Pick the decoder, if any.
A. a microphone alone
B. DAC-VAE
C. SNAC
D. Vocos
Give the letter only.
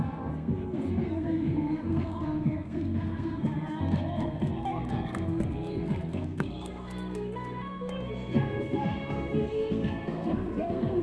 C